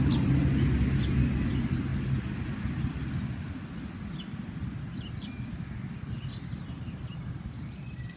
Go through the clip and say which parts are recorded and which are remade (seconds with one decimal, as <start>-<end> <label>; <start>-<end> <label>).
0.0-8.2 recorded